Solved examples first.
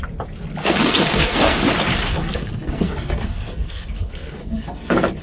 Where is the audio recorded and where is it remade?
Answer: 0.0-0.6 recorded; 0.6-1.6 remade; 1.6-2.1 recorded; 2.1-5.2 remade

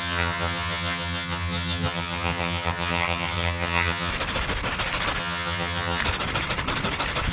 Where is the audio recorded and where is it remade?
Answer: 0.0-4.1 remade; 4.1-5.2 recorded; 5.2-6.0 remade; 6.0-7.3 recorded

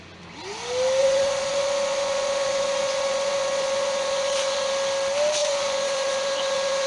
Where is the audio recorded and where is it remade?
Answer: 0.0-1.0 recorded; 1.0-4.7 remade; 4.7-5.4 recorded; 5.4-6.9 remade

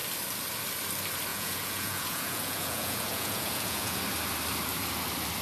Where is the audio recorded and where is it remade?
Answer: 0.0-1.3 recorded; 1.3-4.0 remade; 4.0-5.4 recorded

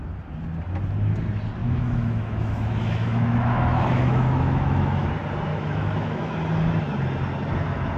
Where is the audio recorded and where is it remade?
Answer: 0.0-1.6 recorded; 1.6-5.1 remade; 5.1-5.5 recorded; 5.5-6.3 remade; 6.3-8.0 recorded